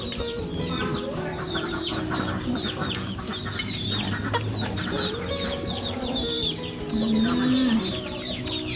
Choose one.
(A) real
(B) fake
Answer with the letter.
B